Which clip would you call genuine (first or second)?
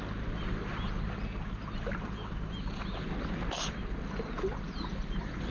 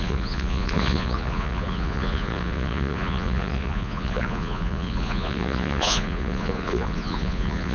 first